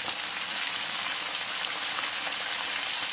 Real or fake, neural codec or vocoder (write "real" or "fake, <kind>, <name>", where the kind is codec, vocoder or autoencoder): real